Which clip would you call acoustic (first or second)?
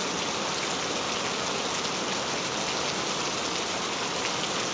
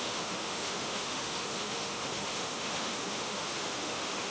first